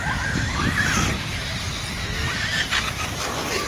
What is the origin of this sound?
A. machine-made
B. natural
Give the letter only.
B